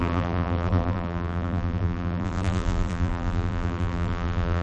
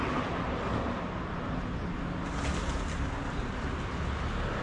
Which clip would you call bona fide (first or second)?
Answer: second